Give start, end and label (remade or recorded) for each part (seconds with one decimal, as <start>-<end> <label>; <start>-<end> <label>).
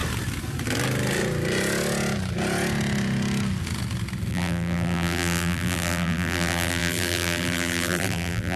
0.0-4.3 recorded; 4.3-8.6 remade